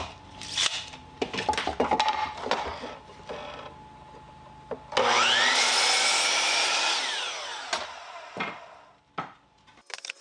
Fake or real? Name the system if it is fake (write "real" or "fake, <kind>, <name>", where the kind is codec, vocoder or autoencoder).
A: real